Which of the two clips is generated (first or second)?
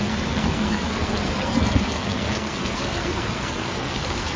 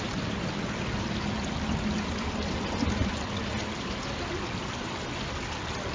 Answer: first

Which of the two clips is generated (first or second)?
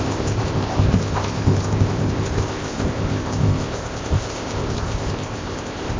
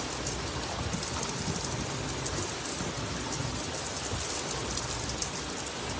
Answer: first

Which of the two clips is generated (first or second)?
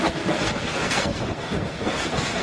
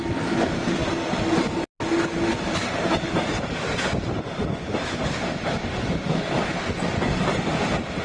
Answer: first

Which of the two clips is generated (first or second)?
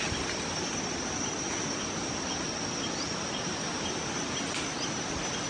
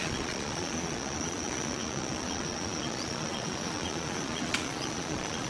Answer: second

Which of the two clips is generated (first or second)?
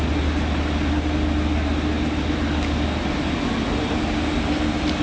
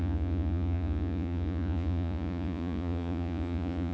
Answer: second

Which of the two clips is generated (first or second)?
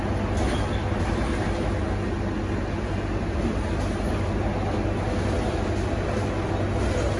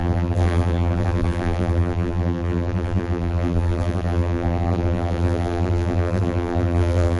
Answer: second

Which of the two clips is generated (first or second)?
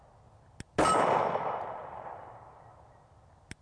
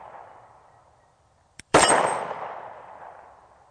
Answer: second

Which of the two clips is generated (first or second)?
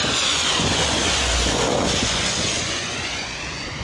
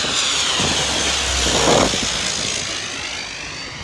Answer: first